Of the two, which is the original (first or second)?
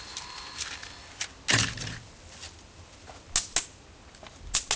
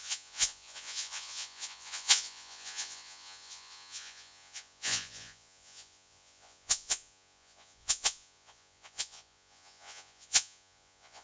first